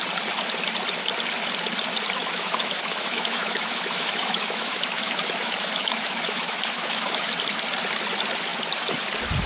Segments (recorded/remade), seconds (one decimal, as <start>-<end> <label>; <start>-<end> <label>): 0.0-2.2 recorded; 2.2-7.3 remade; 7.3-9.5 recorded